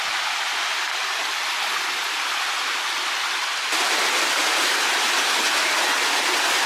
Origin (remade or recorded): recorded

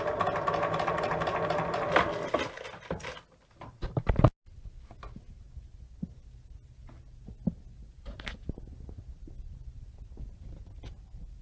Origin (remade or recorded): recorded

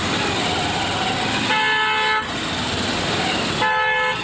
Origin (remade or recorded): recorded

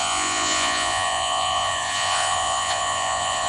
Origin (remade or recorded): remade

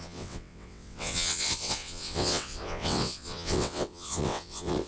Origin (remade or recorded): remade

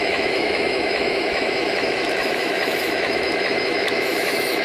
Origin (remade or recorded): remade